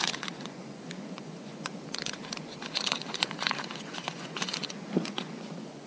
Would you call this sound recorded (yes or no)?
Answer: no